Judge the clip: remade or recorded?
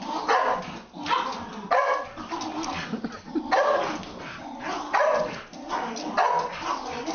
recorded